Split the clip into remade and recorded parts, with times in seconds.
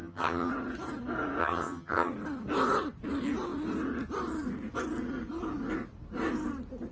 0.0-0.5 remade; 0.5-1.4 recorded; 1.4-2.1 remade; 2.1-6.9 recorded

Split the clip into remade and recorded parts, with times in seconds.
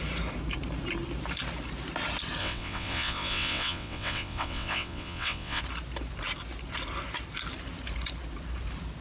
0.0-2.4 recorded; 2.4-5.6 remade; 5.6-9.0 recorded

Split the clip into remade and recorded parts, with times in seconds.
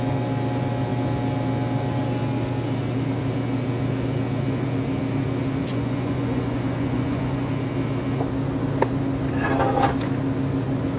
0.0-5.7 recorded; 5.7-7.5 remade; 7.5-11.0 recorded